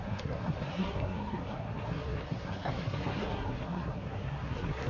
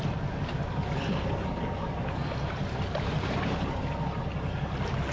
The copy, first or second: first